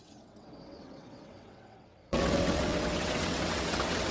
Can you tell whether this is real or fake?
fake